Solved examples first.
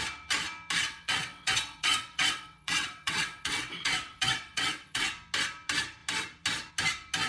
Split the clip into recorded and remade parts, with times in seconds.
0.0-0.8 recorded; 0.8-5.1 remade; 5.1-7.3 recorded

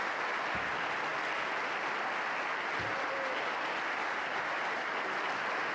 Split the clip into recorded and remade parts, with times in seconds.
0.0-5.7 recorded

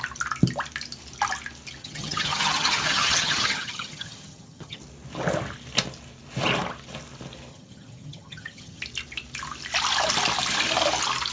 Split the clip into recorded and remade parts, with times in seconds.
0.0-1.8 recorded; 1.8-4.8 remade; 4.8-7.5 recorded; 7.5-8.8 remade; 8.8-11.3 recorded